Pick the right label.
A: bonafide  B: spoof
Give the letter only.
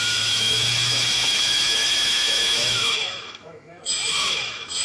B